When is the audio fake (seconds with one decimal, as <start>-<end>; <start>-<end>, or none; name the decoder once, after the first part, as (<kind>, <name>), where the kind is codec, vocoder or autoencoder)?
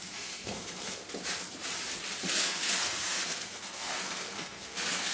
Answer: 0.0-1.0 (codec, SNAC); 2.3-5.1